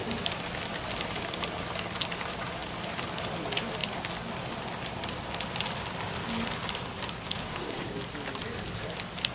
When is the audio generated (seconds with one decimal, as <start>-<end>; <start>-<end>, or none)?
7.4-7.9